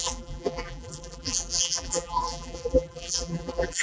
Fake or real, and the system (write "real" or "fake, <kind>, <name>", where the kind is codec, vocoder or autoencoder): fake, vocoder, BigVGAN v2